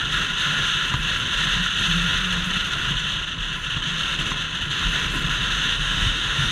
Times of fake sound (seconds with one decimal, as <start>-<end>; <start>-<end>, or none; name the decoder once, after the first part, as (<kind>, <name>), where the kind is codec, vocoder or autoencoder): 5.7-6.5 (autoencoder, DAC-VAE)